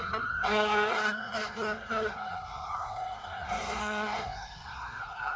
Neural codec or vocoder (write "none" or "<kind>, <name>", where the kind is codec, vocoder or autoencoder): codec, SNAC